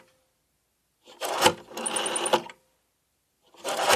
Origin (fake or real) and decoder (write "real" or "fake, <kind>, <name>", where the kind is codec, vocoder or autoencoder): real